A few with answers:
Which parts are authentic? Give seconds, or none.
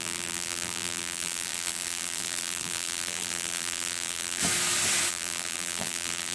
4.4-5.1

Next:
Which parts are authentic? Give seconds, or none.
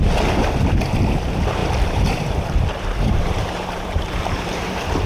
0.0-1.6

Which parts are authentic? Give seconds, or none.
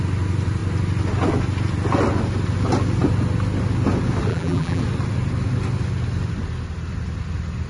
0.0-4.3; 4.8-7.7